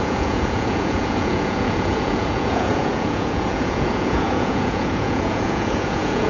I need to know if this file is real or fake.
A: fake